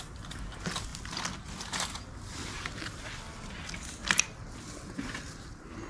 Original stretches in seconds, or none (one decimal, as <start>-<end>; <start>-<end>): 0.0-5.9